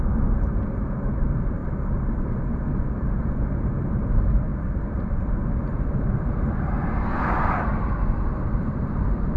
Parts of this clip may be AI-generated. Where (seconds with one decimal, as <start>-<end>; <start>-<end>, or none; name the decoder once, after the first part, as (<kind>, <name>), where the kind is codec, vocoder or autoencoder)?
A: 0.0-9.4 (vocoder, BigVGAN v2)